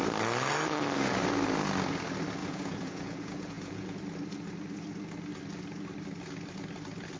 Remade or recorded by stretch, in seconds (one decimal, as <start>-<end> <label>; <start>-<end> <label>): 0.0-2.4 recorded; 2.4-4.0 remade; 4.0-7.2 recorded